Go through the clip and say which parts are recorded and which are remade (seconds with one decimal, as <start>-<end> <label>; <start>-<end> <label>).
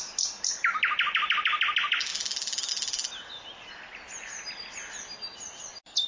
0.0-6.1 recorded